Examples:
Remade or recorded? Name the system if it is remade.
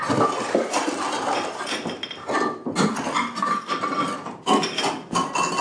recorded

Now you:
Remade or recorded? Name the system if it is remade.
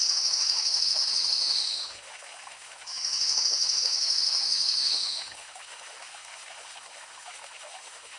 remade, autoencoder, DAC-VAE